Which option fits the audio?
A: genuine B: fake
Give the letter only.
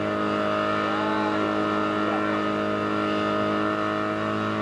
A